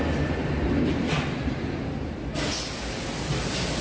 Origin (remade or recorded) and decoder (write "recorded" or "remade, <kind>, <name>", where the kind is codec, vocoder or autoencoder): recorded